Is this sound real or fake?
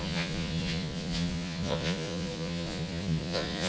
fake